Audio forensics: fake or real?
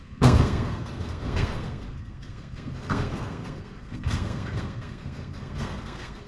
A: fake